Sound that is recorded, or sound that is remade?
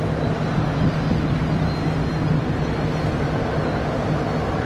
recorded